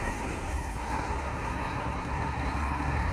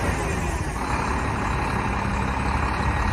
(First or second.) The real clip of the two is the second